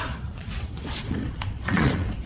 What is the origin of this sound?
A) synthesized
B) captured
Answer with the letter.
A